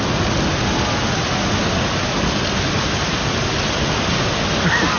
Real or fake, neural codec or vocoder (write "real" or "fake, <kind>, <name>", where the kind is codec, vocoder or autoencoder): real